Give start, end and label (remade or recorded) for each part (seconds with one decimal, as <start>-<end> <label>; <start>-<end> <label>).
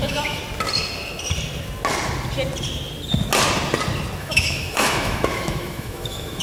0.0-0.4 remade; 0.4-4.2 recorded; 4.2-6.4 remade